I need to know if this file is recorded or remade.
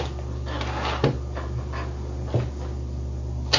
recorded